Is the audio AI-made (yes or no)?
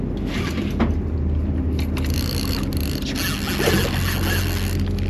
no